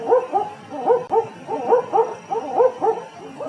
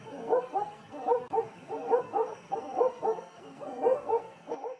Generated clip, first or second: second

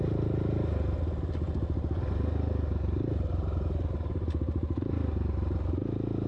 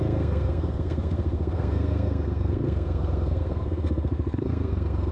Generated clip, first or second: second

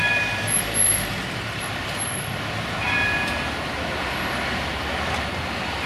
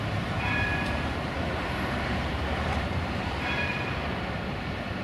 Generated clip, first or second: second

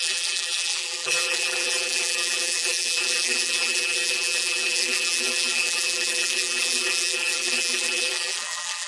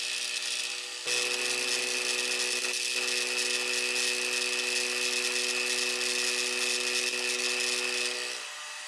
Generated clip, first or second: first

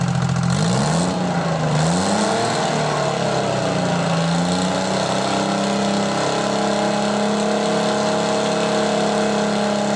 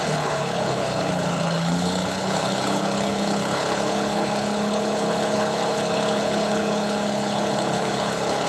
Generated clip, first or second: second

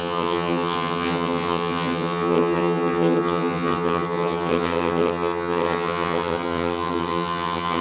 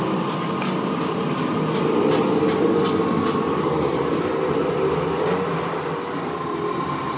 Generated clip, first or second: first